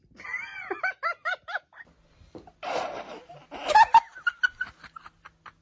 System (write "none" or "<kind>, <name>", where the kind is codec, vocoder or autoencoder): none